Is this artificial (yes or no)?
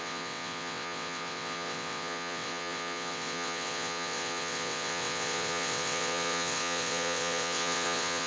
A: yes